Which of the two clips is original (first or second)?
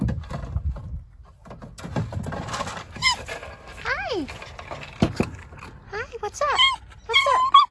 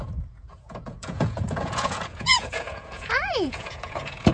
first